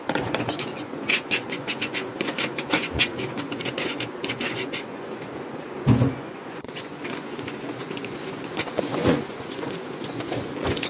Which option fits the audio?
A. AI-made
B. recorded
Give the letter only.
A